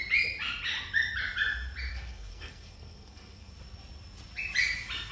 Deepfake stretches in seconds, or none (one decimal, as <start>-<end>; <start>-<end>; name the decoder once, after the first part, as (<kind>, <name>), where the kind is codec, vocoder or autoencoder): 1.9-3.5 (codec, SNAC)